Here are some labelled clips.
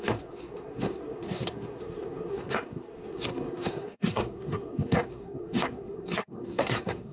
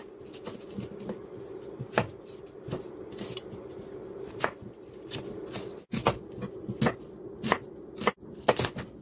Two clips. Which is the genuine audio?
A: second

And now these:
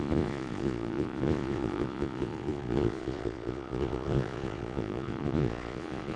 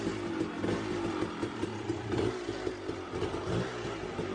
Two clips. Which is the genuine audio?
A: second